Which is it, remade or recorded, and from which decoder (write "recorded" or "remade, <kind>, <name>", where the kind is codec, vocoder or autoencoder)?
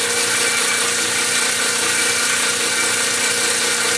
recorded